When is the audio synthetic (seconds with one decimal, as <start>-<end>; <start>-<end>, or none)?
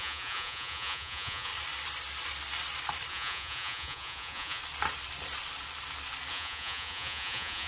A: 0.0-1.5; 3.1-4.6; 6.3-7.7